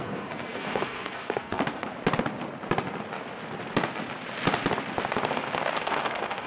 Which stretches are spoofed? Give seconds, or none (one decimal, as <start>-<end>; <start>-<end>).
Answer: 0.0-1.9; 5.8-6.5